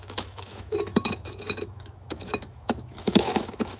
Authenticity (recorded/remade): remade